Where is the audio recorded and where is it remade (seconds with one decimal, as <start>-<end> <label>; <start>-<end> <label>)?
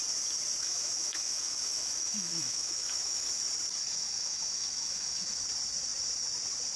0.0-0.6 recorded; 0.6-3.4 remade; 3.4-3.9 recorded; 3.9-5.4 remade; 5.4-6.8 recorded